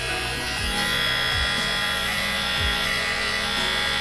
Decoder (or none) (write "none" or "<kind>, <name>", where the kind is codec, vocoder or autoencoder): vocoder, Vocos